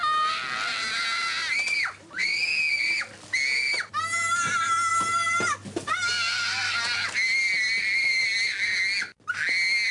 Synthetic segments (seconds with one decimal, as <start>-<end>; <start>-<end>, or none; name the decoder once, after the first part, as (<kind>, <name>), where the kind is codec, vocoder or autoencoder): none